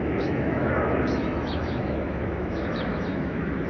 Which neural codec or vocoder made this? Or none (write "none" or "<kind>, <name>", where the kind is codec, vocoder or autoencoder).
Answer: autoencoder, DAC-VAE